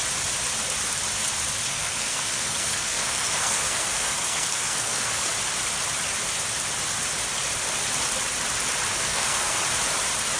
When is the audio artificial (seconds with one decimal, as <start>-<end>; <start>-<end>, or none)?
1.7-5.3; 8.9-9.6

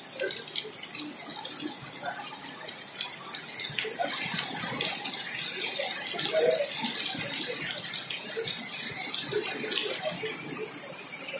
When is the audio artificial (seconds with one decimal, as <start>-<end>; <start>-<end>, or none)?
none

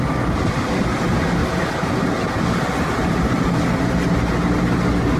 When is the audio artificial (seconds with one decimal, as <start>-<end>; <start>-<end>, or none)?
none

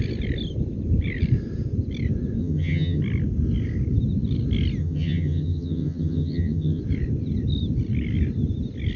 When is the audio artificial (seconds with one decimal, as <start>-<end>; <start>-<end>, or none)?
2.4-3.0; 4.8-6.8